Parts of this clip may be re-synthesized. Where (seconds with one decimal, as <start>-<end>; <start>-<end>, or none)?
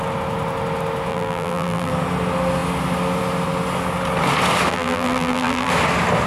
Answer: 1.1-1.9; 4.7-5.7